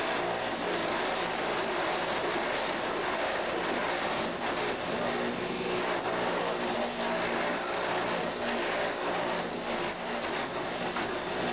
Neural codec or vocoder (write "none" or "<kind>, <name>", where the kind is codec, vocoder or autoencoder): none